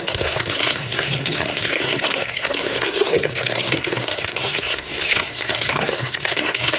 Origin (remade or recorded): remade